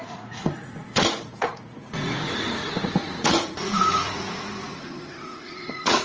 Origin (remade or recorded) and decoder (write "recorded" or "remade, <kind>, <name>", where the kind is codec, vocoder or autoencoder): remade, vocoder, Vocos